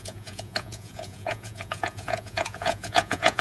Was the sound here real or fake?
fake